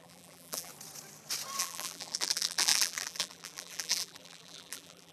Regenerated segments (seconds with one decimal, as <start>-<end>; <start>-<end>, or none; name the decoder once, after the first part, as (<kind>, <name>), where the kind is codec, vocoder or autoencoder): 0.0-0.7 (vocoder, BigVGAN v2); 1.6-5.1